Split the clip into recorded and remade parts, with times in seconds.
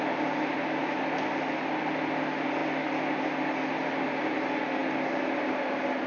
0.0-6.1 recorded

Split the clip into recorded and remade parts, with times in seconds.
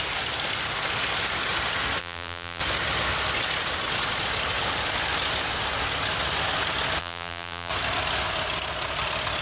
0.0-2.0 recorded; 2.0-2.6 remade; 2.6-7.0 recorded; 7.0-7.7 remade; 7.7-9.4 recorded